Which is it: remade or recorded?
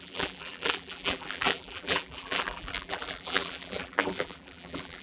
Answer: remade